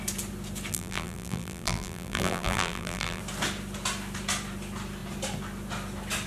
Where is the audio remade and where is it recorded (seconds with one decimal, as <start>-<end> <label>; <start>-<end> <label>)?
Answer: 0.0-0.7 recorded; 0.7-3.2 remade; 3.2-6.3 recorded

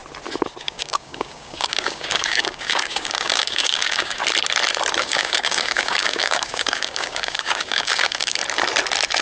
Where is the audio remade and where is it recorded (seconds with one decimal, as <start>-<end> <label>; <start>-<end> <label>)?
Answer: 0.0-0.6 recorded; 0.6-4.2 remade; 4.2-5.0 recorded; 5.0-8.4 remade; 8.4-9.2 recorded

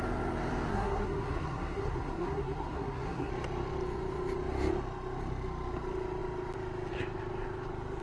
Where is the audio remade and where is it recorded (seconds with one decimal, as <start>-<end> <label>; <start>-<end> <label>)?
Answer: 0.0-0.7 recorded; 0.7-3.3 remade; 3.3-8.0 recorded